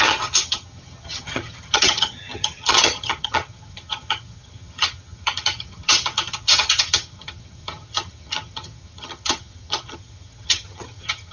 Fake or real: fake